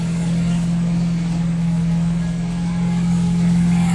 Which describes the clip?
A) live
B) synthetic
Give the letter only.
B